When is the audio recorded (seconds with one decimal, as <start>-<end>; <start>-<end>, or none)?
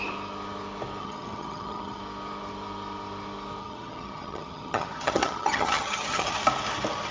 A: 0.0-1.0; 2.0-3.6; 6.4-7.1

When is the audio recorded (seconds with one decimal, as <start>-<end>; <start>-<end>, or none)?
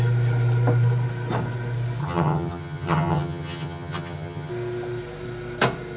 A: 0.0-2.0; 4.5-6.0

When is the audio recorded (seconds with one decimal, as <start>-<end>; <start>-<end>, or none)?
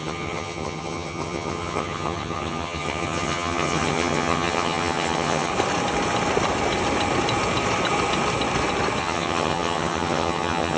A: 5.5-9.0